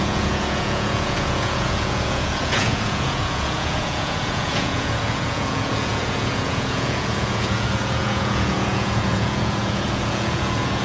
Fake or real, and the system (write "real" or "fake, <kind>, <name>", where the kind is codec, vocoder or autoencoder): fake, vocoder, Vocos